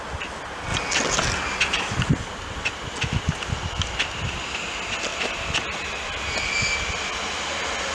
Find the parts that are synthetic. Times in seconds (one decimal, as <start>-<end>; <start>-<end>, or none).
0.7-2.1

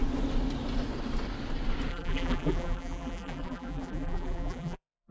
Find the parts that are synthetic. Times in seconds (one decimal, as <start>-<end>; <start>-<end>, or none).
1.9-5.1

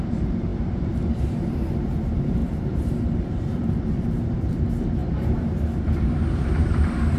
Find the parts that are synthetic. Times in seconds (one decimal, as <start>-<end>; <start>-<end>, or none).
0.0-7.2

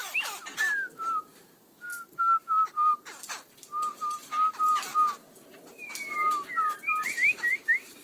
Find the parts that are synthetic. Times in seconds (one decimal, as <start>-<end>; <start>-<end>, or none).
5.5-8.0

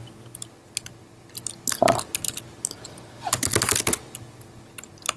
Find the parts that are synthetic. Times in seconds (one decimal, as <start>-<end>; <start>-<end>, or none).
none

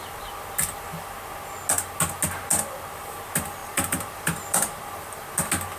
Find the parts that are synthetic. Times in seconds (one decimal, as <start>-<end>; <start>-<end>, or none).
3.6-5.1

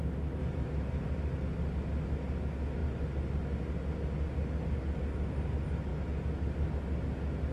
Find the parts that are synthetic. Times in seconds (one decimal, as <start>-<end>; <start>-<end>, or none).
0.4-1.2

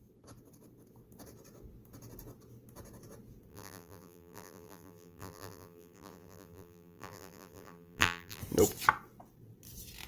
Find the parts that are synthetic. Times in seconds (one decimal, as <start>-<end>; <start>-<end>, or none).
3.5-8.4